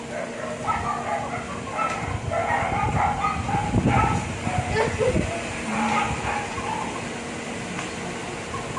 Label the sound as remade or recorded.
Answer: recorded